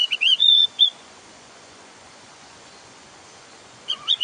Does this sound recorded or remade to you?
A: remade